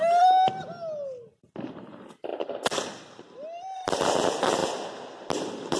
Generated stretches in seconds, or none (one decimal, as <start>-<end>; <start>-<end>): none